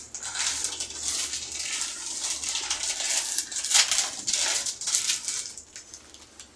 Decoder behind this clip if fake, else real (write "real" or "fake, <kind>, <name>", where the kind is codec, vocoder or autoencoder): real